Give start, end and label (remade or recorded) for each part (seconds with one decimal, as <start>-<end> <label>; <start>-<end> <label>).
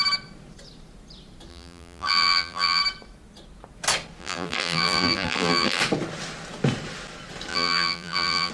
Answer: 0.0-1.5 recorded; 1.5-2.8 remade; 2.8-4.2 recorded; 4.2-5.8 remade; 5.8-7.5 recorded; 7.5-8.5 remade